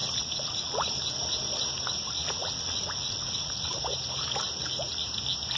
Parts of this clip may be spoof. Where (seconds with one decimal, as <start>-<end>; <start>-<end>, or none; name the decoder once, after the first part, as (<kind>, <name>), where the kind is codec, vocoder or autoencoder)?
0.0-0.9 (vocoder, Vocos); 2.2-3.8